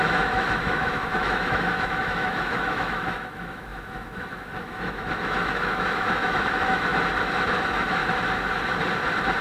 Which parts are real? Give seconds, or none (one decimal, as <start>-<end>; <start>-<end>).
6.9-7.6; 8.0-9.4